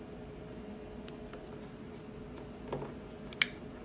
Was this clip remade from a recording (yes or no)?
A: no